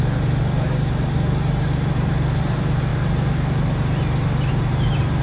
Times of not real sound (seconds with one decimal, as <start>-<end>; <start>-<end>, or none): none